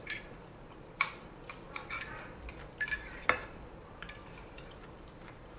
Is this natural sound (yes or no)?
no